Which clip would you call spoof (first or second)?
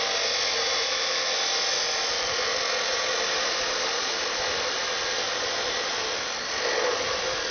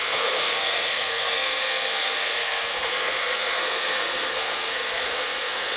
second